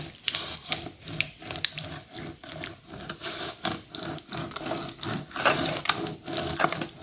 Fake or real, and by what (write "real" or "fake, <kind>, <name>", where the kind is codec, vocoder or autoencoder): real